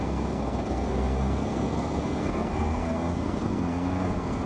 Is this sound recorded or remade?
remade